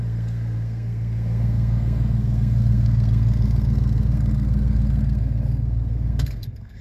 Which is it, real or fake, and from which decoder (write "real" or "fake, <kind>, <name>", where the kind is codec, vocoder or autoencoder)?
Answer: fake, codec, SNAC